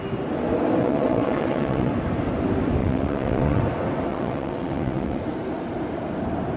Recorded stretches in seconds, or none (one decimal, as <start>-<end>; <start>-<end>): 0.0-0.8; 1.9-2.8; 3.6-4.1; 5.2-6.6